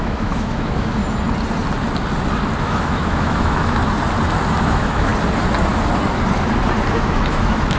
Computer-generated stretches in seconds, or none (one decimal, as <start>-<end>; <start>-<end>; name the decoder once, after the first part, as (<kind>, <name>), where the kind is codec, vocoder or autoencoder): 0.0-1.0 (autoencoder, DAC-VAE); 2.6-3.8; 4.6-5.1; 6.9-7.8

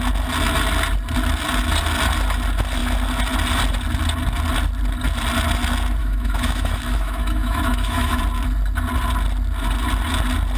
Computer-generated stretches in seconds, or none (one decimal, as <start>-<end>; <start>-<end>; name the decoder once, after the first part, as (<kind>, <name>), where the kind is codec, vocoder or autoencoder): 6.0-8.2 (autoencoder, DAC-VAE)

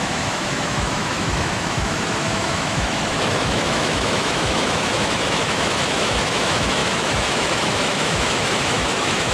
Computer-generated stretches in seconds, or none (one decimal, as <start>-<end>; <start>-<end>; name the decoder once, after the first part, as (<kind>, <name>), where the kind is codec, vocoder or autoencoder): 0.0-9.3 (autoencoder, DAC-VAE)

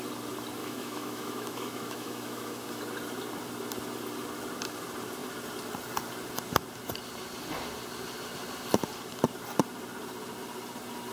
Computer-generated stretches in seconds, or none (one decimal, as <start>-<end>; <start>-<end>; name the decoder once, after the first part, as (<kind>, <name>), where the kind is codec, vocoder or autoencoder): 0.6-2.8 (autoencoder, DAC-VAE)